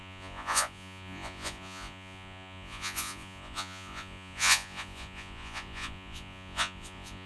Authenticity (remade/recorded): remade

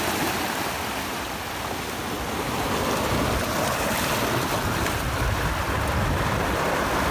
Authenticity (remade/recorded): recorded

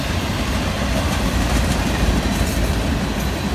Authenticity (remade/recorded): recorded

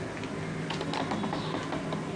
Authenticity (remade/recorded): recorded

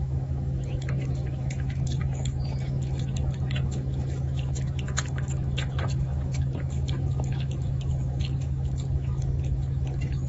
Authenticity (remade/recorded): remade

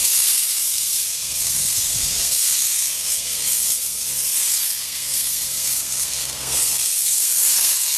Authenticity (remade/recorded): remade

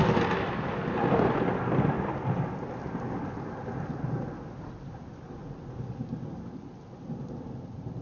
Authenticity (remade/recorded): recorded